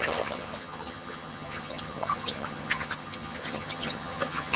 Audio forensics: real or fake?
fake